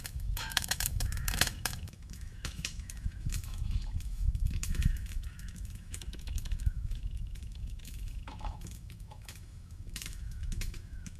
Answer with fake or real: fake